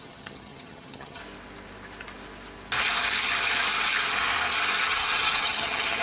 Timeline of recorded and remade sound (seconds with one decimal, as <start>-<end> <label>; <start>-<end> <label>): 0.0-1.2 remade; 1.2-4.8 recorded; 4.8-6.0 remade